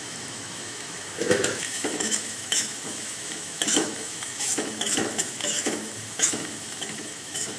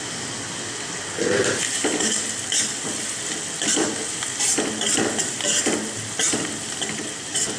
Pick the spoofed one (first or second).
first